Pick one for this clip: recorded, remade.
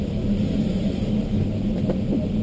recorded